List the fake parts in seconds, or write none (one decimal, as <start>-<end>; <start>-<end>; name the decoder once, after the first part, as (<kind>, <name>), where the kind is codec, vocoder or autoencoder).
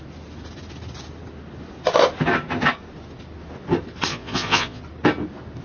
4.1-4.8 (vocoder, Vocos)